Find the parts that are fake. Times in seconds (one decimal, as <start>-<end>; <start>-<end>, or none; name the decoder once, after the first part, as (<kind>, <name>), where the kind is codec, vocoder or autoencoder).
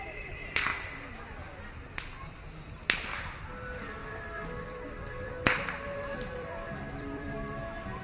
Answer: 4.0-8.0 (vocoder, BigVGAN v2)